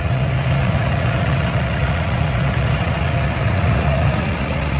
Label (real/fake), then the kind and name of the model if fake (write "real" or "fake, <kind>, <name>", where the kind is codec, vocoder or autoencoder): fake, vocoder, Vocos